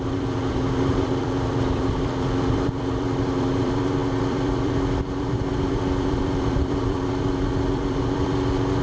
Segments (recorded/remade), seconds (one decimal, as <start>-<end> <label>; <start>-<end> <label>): 0.0-8.8 remade